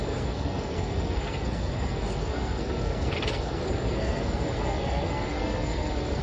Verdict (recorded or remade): remade